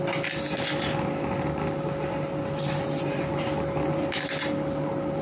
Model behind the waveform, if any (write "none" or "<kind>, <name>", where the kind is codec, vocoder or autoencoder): none